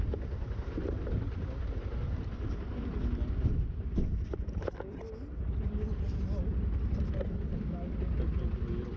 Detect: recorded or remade recorded